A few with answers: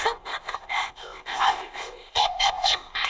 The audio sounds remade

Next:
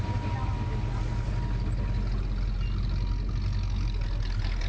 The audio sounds recorded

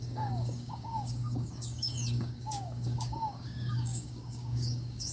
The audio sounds remade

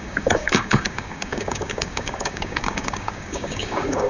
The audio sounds remade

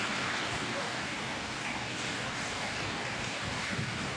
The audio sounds remade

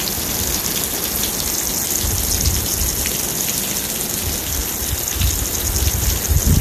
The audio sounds recorded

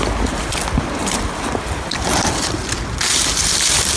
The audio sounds recorded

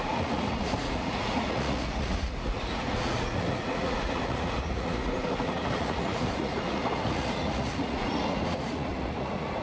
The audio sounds remade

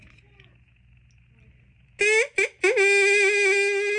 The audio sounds recorded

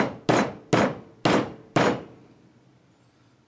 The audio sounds recorded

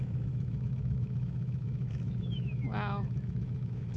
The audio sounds remade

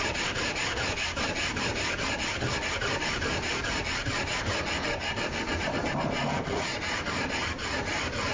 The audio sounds remade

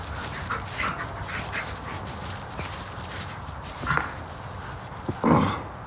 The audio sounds recorded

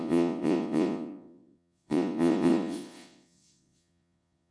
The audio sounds remade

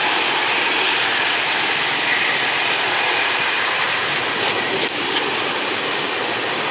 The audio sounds recorded